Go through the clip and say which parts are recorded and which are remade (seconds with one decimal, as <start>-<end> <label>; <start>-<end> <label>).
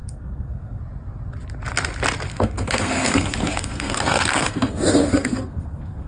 0.0-0.8 remade; 0.8-2.3 recorded; 2.3-6.1 remade